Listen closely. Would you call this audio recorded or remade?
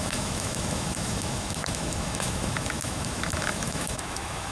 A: remade